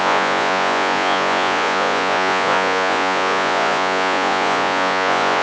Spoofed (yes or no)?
yes